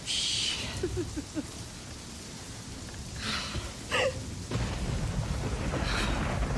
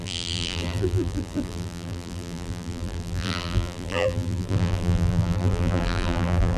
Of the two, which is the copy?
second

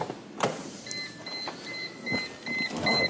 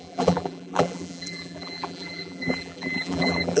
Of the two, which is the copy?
second